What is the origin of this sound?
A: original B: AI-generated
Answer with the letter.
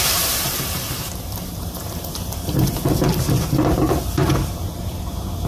B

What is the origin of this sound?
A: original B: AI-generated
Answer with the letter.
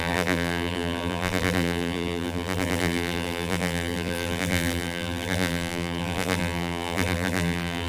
B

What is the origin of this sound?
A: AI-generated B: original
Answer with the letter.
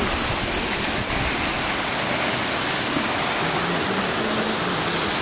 B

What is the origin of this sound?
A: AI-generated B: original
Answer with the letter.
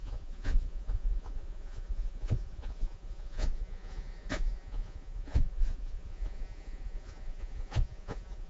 A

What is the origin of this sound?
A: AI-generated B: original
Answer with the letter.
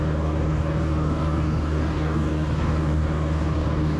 A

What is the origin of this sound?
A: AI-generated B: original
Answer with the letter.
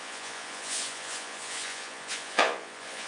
A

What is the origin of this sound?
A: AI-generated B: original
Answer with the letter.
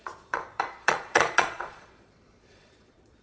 A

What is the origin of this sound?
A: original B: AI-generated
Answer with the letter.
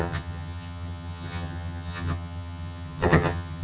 B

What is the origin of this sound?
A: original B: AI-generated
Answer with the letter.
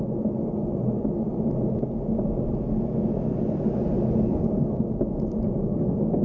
A